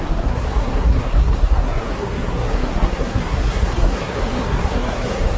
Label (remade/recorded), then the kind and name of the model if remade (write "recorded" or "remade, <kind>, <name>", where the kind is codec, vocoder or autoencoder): remade, codec, SNAC